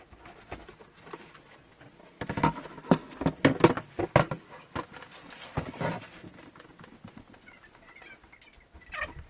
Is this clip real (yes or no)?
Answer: yes